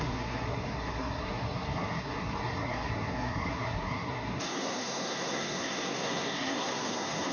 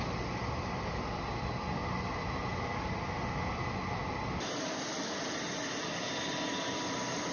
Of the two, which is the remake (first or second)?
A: first